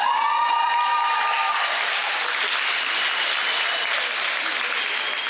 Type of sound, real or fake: fake